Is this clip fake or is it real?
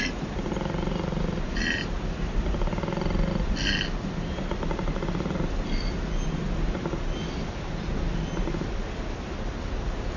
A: real